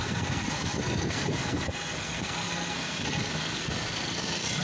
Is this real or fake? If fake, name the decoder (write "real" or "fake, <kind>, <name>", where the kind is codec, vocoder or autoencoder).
fake, codec, SNAC